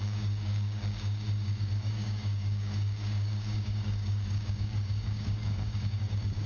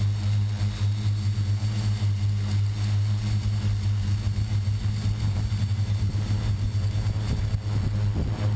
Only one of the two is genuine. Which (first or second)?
second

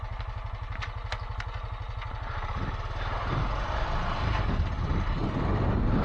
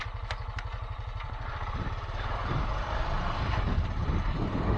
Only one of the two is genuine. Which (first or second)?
first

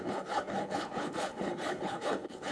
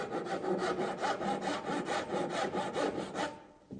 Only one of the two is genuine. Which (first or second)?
second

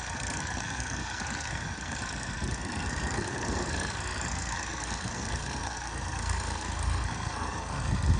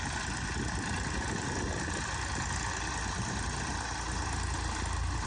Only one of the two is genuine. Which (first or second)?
second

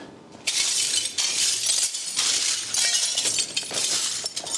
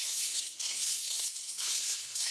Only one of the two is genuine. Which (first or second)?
first